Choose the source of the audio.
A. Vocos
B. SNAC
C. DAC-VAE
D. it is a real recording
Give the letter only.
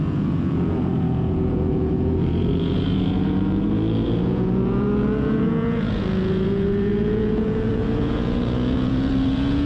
A